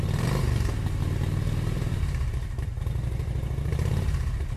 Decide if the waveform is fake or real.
fake